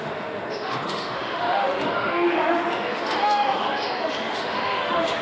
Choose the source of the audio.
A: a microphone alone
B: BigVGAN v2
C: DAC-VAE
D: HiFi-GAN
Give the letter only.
C